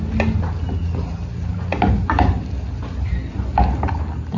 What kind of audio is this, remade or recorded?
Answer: recorded